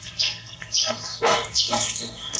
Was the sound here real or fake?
fake